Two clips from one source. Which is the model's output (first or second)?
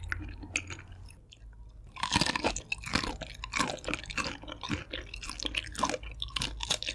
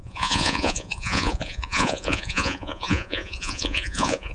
second